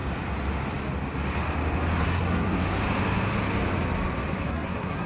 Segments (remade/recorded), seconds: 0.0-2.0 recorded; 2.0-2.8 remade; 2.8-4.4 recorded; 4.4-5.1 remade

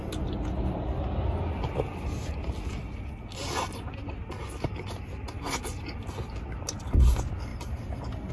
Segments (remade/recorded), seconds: 0.0-7.5 recorded; 7.5-8.3 remade

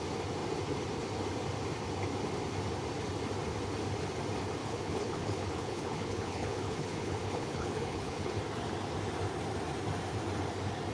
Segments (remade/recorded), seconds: 0.0-4.6 recorded; 4.6-8.3 remade; 8.3-10.9 recorded

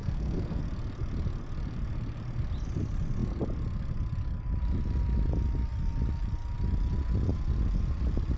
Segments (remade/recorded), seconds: 0.0-0.6 remade; 0.6-8.4 recorded